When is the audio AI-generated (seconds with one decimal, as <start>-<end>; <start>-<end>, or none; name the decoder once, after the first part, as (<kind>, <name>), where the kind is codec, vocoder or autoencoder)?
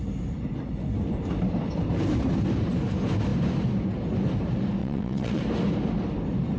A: 4.8-5.4 (vocoder, WaveNeXt)